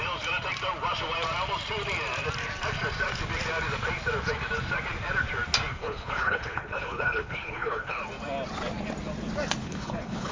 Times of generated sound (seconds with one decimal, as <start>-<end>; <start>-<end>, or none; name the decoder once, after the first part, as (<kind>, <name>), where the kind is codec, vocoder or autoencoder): 5.7-8.0 (codec, HILCodec); 9.6-10.3